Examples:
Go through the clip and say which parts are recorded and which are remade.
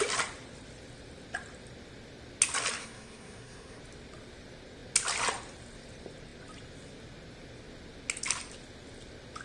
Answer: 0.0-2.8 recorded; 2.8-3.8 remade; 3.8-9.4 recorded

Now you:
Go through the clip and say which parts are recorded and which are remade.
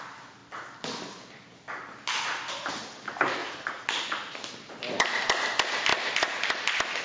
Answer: 0.0-3.4 recorded; 3.4-3.9 remade; 3.9-7.0 recorded